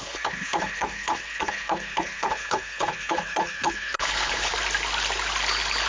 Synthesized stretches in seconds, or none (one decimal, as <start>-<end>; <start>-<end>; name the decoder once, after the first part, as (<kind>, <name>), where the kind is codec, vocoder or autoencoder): 0.0-4.5 (codec, HILCodec)